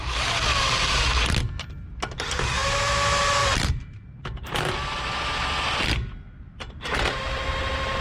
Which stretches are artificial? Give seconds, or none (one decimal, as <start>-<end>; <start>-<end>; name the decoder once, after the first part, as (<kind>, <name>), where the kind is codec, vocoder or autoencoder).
3.4-4.2 (vocoder, BigVGAN v2)